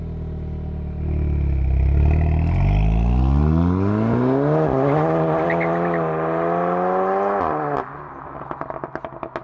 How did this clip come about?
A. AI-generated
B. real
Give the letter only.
B